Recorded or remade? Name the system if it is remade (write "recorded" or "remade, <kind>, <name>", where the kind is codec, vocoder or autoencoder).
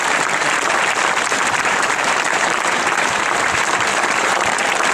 remade, vocoder, BigVGAN v2